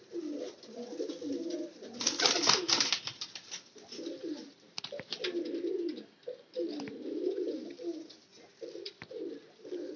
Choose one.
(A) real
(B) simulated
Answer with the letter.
A